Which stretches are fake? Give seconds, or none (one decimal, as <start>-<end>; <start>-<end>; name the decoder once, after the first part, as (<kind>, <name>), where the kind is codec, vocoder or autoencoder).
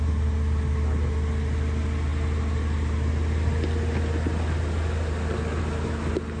none